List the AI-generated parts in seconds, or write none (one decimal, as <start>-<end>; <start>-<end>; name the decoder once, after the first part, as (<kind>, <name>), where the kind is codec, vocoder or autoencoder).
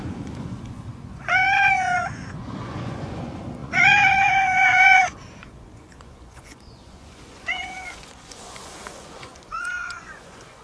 0.0-10.6 (vocoder, Vocos)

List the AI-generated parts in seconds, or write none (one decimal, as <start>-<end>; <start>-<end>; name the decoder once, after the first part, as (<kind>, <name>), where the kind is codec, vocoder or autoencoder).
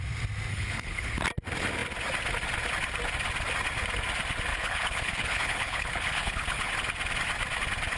0.5-1.2 (codec, HILCodec); 4.5-6.7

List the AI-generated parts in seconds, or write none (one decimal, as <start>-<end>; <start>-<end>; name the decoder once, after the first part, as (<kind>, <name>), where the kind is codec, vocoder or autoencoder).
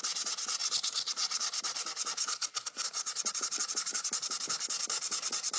none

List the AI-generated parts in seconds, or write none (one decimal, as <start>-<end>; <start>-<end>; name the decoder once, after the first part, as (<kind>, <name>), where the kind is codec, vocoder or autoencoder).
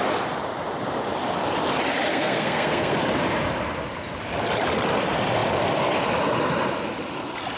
2.1-2.9 (codec, SNAC)